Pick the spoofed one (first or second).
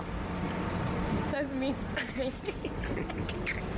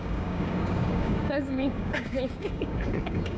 second